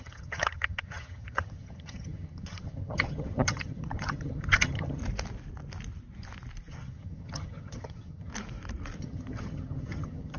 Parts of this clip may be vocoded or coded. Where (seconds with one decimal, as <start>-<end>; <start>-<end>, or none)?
0.0-5.0; 6.7-8.3; 9.0-10.4